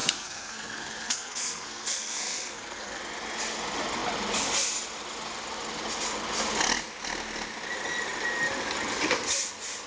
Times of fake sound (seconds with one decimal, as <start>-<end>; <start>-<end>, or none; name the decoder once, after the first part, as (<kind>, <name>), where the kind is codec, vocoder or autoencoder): 0.0-3.0 (codec, SNAC)

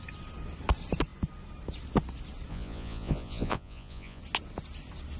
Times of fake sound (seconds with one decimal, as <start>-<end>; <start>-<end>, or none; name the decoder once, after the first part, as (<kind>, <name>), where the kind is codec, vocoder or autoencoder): 2.5-4.2 (vocoder, Vocos)

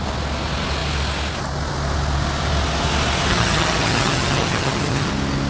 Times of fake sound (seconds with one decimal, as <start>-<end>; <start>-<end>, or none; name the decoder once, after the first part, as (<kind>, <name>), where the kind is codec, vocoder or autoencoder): 3.3-5.1 (vocoder, HiFi-GAN)

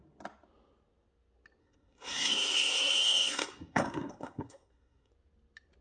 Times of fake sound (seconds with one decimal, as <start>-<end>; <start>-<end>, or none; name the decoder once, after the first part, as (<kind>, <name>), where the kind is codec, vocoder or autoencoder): 1.6-5.1 (codec, SNAC)